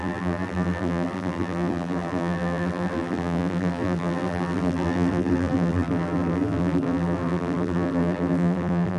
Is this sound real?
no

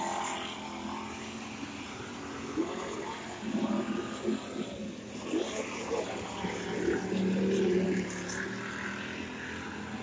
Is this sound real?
yes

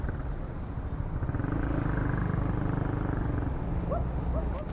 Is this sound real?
yes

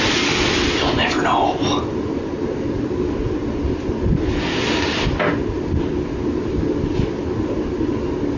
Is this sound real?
yes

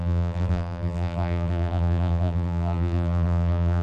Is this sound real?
no